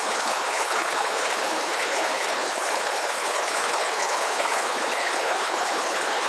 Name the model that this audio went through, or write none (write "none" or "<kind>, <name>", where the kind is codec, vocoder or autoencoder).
codec, HILCodec